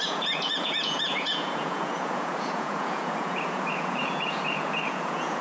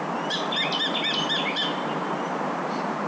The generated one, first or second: first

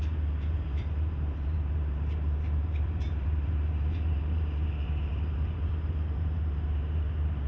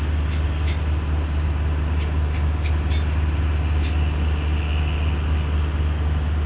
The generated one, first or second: first